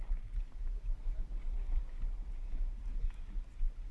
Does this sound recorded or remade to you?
recorded